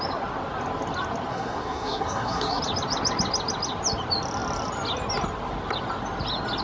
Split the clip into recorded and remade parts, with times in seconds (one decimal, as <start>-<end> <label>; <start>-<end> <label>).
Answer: 0.0-1.3 recorded; 1.3-2.6 remade; 2.6-6.6 recorded